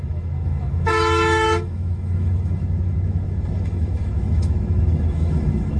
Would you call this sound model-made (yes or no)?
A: yes